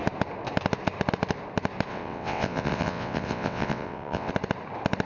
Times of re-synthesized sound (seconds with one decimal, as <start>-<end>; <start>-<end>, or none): 1.9-4.3